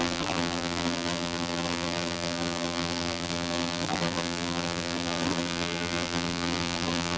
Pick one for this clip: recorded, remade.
remade